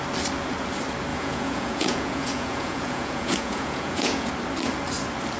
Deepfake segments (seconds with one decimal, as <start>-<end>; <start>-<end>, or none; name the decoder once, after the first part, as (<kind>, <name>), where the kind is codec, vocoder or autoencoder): 1.1-4.3 (vocoder, Vocos)